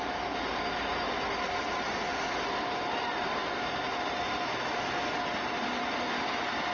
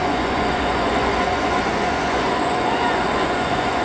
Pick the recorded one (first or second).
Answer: first